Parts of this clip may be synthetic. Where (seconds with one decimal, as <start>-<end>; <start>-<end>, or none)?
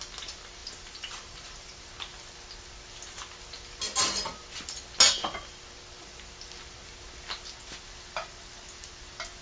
0.6-1.9